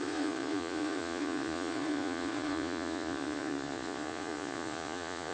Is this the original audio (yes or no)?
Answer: no